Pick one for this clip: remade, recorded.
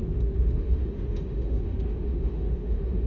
remade